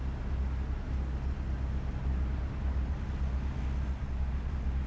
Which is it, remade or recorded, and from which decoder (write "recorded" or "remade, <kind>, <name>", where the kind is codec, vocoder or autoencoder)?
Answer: recorded